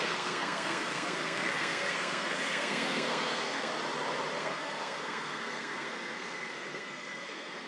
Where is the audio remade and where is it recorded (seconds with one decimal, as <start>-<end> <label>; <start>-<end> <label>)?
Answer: 0.0-3.7 remade; 3.7-4.4 recorded; 4.4-7.7 remade

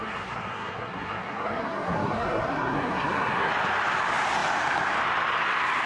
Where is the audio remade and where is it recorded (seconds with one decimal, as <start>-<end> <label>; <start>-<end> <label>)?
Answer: 0.0-3.5 remade; 3.5-5.9 recorded